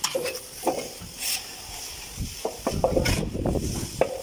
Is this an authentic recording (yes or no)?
no